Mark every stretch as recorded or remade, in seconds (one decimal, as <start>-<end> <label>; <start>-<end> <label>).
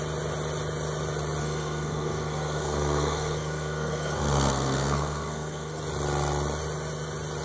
0.0-1.4 recorded; 1.4-5.8 remade; 5.8-7.4 recorded